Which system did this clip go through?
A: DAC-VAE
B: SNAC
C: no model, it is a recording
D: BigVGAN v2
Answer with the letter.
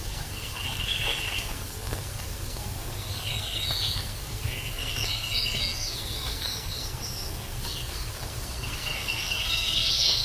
B